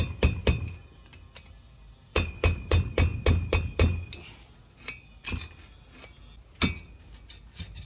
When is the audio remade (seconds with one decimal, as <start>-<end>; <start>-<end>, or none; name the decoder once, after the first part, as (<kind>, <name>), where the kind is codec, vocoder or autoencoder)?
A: none